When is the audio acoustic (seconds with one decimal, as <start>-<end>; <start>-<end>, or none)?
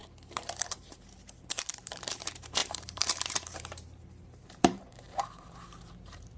0.0-0.7